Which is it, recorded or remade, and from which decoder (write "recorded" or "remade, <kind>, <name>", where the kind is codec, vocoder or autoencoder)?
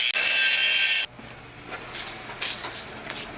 recorded